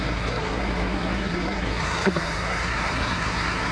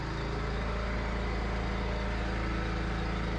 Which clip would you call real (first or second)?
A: second